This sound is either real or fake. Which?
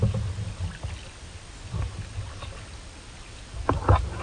real